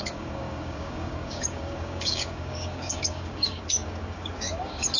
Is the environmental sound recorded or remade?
remade